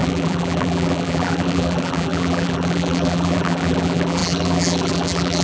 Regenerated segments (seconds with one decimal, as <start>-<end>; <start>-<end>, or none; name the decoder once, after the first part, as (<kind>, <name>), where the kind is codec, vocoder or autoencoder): 0.0-5.4 (vocoder, BigVGAN v2)